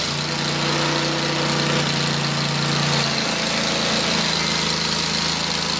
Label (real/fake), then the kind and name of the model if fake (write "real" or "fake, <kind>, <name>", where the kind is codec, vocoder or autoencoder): real